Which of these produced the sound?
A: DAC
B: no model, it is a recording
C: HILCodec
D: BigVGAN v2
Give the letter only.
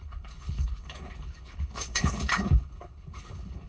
C